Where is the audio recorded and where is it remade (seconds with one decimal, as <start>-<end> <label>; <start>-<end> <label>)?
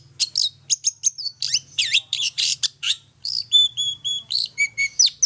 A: 0.0-1.4 recorded; 1.4-4.6 remade; 4.6-5.3 recorded